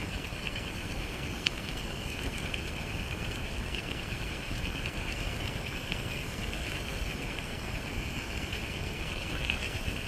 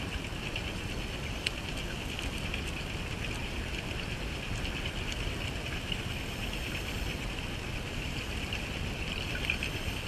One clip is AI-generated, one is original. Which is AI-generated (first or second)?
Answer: first